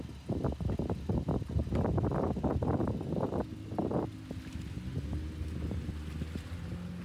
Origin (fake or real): real